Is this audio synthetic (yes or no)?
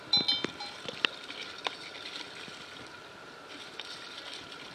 no